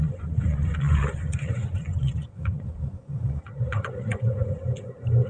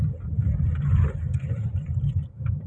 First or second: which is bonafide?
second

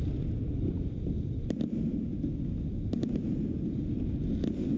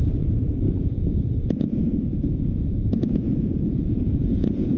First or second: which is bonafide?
first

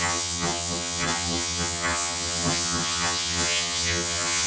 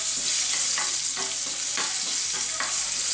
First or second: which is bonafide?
second